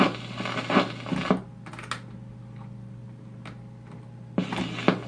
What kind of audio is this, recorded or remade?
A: recorded